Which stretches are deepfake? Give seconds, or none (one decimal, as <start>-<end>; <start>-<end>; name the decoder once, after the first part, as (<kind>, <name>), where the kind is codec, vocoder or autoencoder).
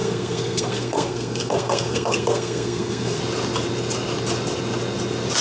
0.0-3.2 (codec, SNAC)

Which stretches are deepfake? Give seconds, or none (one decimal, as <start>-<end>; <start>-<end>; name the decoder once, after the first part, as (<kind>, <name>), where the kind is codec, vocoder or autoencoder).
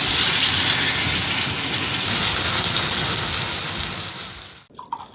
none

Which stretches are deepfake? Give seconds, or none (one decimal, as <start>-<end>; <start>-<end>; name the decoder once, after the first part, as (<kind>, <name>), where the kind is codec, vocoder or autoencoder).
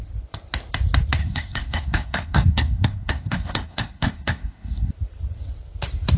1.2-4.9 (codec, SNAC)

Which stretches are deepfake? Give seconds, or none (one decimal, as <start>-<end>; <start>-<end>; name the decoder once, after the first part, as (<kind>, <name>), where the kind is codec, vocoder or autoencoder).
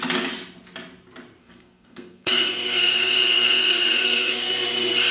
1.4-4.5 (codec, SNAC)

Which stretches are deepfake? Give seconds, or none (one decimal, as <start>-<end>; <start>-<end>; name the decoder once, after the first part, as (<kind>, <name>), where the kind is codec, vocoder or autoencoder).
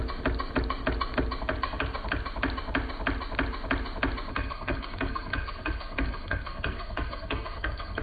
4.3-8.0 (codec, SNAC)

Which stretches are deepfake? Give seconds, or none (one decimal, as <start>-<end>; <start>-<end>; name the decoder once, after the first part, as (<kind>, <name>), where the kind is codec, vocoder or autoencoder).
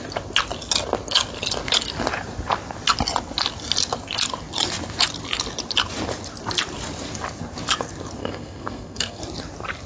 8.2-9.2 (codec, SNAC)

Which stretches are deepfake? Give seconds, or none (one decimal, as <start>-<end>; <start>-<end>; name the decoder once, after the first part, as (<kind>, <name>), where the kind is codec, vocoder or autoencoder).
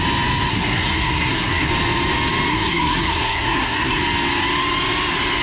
0.5-1.7 (codec, SNAC); 2.5-4.0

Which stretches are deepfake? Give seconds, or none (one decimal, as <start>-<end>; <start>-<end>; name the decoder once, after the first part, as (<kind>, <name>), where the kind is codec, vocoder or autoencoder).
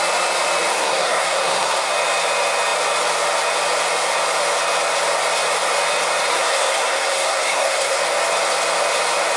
0.7-1.9 (codec, SNAC); 6.3-8.0